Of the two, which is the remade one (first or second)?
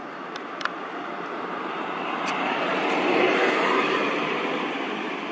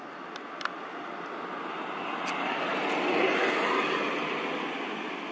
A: first